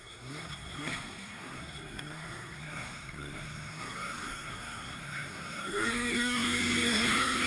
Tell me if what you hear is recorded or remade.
remade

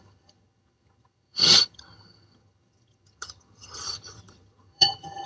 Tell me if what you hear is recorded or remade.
remade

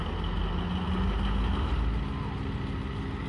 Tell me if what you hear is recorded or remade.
recorded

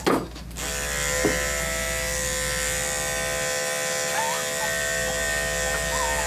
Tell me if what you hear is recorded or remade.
recorded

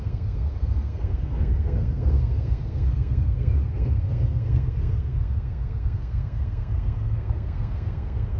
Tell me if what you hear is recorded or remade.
remade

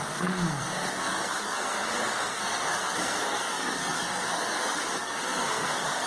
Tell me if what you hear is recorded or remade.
remade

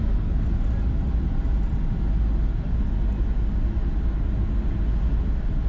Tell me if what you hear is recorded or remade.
recorded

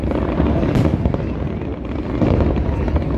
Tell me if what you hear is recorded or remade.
recorded